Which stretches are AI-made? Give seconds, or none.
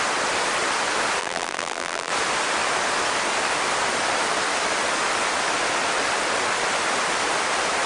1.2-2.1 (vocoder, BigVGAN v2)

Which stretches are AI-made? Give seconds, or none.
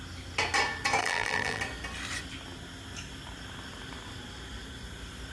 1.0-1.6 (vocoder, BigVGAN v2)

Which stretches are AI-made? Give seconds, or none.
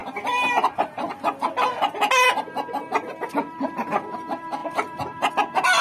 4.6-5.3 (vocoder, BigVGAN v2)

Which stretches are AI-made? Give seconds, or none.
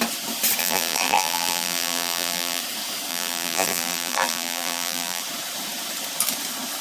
0.6-2.6 (vocoder, BigVGAN v2); 3.1-5.2